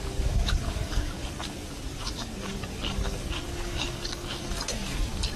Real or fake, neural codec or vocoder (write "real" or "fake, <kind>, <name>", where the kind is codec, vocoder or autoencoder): fake, codec, DAC